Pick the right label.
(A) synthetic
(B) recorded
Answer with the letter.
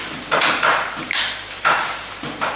A